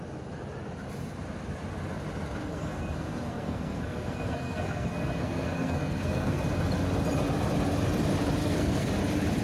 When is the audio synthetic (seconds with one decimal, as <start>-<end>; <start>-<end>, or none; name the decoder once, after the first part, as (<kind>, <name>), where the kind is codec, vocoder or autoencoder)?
2.5-6.4 (codec, SNAC); 8.4-8.9